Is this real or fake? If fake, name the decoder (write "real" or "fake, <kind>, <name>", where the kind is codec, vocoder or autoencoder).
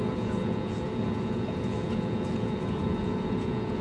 fake, vocoder, Vocos